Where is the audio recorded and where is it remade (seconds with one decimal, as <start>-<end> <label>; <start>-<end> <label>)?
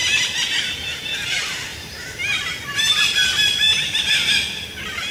0.0-1.7 recorded; 1.7-3.0 remade; 3.0-3.7 recorded; 3.7-4.3 remade; 4.3-5.1 recorded